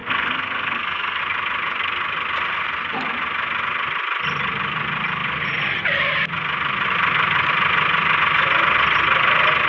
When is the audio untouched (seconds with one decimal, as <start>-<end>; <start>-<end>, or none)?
1.2-9.7